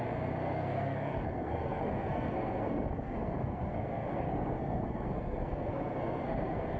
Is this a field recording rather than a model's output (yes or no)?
no